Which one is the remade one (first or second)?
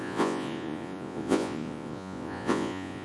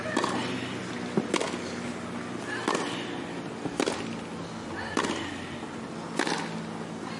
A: first